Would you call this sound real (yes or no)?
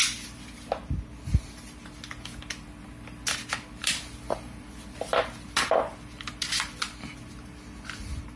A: yes